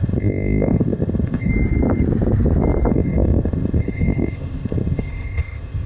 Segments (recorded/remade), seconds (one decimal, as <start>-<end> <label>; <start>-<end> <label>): 0.0-1.5 remade; 1.5-2.9 recorded; 2.9-5.9 remade